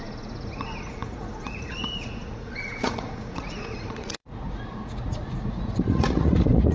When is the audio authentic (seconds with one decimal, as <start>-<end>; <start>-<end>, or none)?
none